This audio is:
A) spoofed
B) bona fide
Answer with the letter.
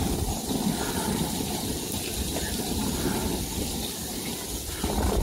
B